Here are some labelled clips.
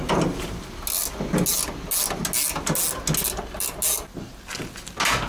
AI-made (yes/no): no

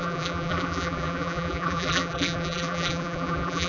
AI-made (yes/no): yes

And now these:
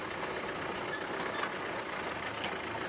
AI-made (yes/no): no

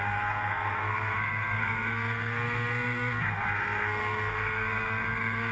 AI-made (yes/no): yes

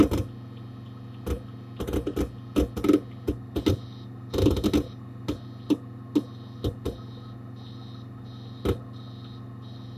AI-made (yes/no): no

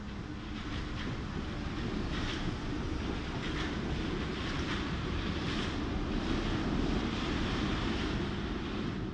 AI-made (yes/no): no